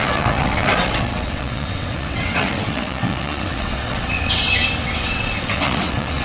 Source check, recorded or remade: remade